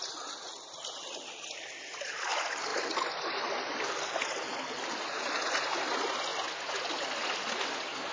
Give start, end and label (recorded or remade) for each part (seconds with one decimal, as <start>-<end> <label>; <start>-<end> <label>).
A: 0.0-8.1 recorded